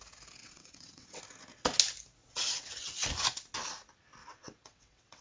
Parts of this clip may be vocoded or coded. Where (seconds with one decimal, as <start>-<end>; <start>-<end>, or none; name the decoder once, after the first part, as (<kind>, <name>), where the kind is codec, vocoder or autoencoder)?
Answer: 0.4-1.2 (vocoder, WaveNeXt); 2.2-3.1; 4.2-5.2